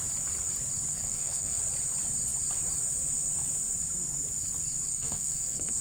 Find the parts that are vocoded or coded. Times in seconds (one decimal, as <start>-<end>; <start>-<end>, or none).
0.9-1.6; 4.9-5.8